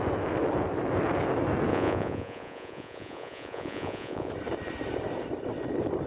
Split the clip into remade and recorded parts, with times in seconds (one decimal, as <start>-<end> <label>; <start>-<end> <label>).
0.0-1.7 recorded; 1.7-4.3 remade; 4.3-6.1 recorded